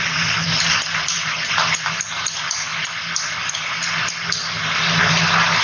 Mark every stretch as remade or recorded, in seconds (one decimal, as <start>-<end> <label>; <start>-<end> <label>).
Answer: 0.0-1.0 recorded; 1.0-1.5 remade; 1.5-5.6 recorded